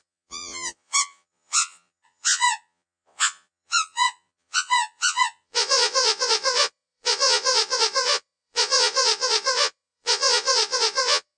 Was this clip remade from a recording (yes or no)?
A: yes